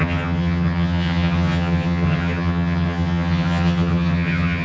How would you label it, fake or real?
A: fake